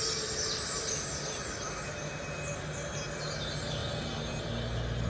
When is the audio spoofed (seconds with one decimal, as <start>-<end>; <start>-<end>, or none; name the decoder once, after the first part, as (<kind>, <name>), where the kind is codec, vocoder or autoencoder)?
none